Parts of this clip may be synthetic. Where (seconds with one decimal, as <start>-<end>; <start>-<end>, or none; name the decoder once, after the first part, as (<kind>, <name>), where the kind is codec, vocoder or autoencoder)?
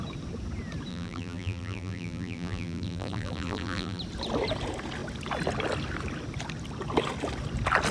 0.9-4.0 (vocoder, BigVGAN v2)